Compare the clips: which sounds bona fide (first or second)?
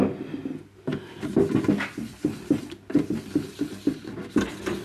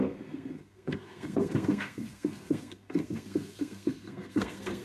first